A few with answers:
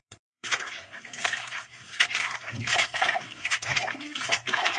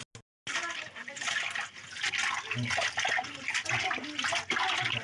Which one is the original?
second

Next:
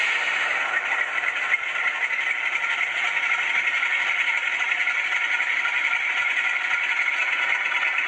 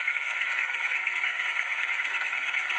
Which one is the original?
first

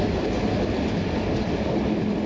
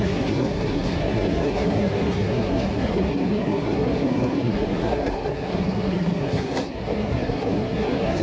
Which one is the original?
first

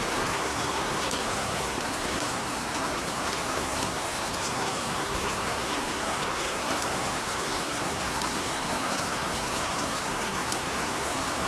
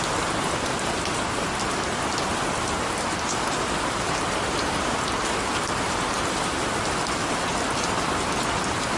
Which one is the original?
second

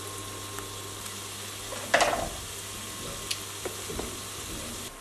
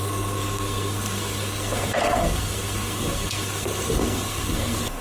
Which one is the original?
first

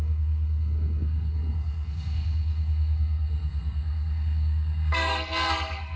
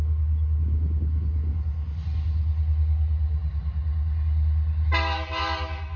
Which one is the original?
second